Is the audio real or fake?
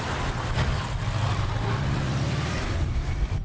fake